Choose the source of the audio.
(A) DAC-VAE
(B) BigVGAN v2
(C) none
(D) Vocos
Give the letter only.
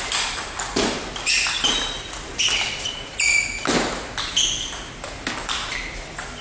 C